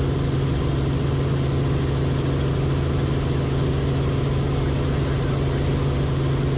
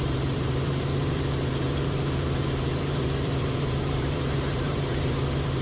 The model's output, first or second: second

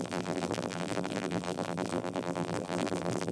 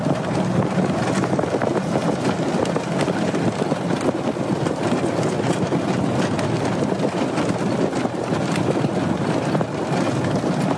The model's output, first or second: first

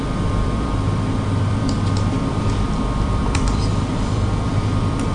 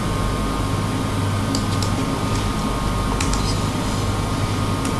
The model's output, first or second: first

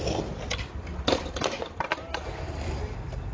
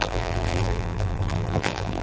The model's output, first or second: second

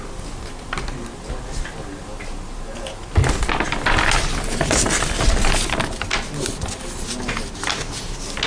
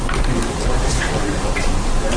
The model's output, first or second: second